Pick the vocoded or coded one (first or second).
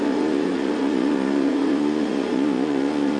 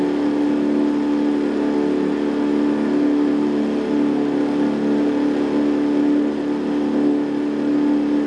first